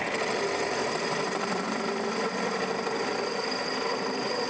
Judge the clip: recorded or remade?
recorded